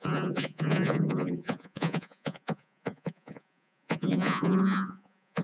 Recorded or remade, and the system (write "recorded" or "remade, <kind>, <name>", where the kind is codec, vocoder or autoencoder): remade, vocoder, Vocos